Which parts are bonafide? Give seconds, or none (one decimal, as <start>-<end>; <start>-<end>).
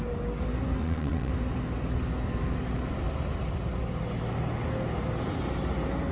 0.0-0.8; 1.3-6.1